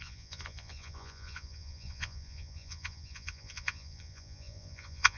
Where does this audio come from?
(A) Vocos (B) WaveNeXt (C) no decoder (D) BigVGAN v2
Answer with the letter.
A